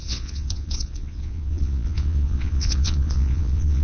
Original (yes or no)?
no